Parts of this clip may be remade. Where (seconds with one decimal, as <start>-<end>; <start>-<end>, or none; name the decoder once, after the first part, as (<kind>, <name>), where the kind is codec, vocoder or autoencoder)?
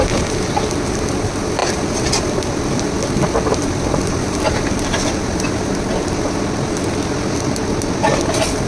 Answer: 0.0-8.7 (vocoder, BigVGAN v2)